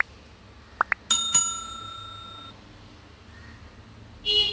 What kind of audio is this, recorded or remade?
recorded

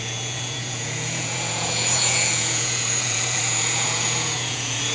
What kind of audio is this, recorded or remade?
remade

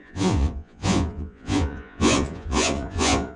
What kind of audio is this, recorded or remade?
remade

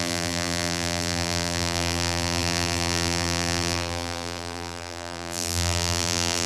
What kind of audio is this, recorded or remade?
remade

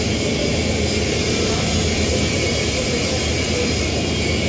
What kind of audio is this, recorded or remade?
remade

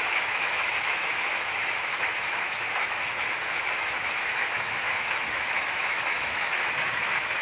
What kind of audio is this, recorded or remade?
remade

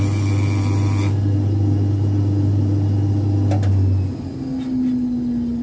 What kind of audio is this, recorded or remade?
recorded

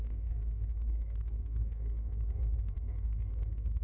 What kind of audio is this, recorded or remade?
remade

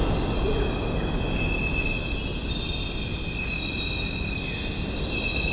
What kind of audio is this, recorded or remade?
recorded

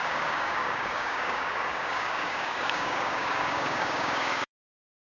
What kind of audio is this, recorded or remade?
remade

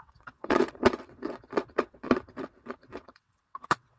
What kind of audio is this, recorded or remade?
remade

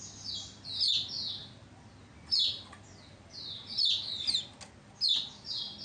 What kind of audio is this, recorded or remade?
recorded